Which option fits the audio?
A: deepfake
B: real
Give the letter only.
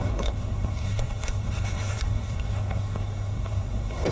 A